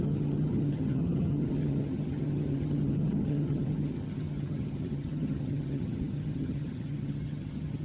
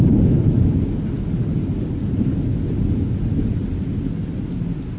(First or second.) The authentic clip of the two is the second